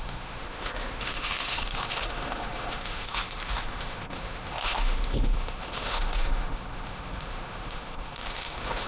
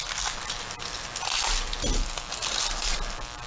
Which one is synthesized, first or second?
first